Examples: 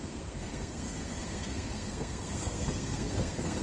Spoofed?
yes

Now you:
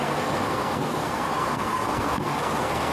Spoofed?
yes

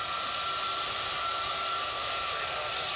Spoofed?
no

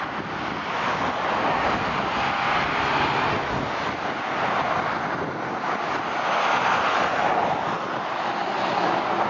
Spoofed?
no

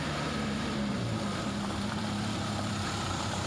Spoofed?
yes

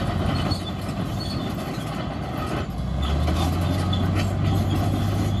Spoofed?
no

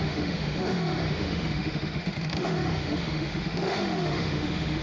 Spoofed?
yes